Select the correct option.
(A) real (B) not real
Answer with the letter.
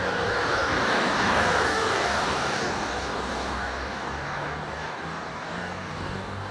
B